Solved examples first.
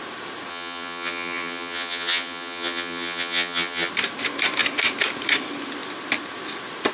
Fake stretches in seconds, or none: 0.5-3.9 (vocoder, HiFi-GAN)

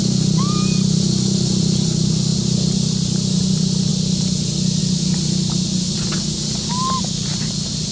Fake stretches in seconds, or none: none

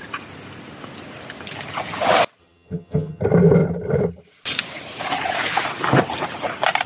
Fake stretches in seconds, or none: 2.4-3.2 (vocoder, HiFi-GAN)

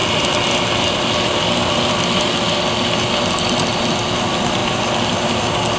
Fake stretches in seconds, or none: none